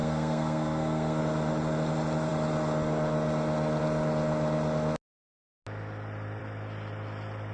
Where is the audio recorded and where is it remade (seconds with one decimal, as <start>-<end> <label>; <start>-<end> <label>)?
0.0-1.2 remade; 1.2-7.5 recorded

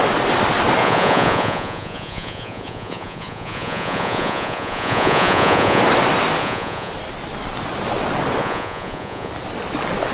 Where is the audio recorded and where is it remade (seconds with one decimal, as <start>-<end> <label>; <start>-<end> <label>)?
0.0-0.8 recorded; 0.8-5.8 remade; 5.8-6.4 recorded; 6.4-6.9 remade; 6.9-8.4 recorded; 8.4-9.3 remade; 9.3-10.1 recorded